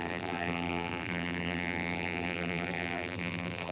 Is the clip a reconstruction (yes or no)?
yes